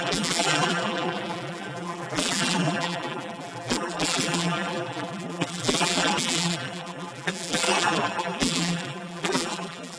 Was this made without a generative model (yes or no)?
no